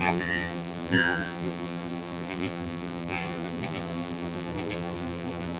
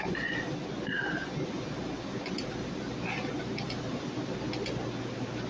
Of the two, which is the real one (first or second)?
second